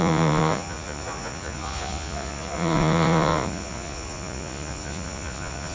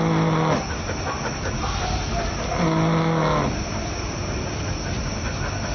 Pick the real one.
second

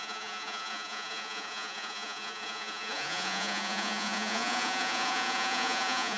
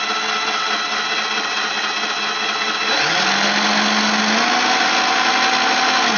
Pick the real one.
second